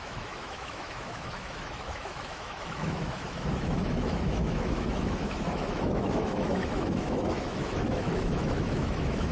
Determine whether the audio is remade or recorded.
remade